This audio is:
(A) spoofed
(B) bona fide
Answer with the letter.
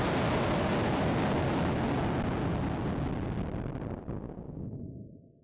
B